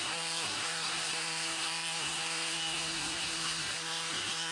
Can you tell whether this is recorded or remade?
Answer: remade